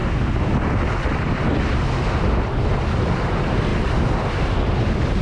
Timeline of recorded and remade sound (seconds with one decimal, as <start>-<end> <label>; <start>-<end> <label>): 0.0-1.1 recorded; 1.1-1.8 remade; 1.8-2.6 recorded; 2.6-3.7 remade; 3.7-5.2 recorded